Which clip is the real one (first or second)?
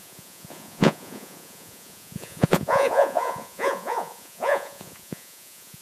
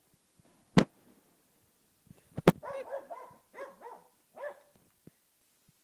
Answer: second